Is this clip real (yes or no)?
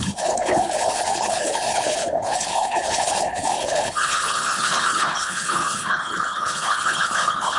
no